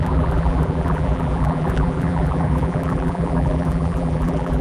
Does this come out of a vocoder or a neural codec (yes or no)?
yes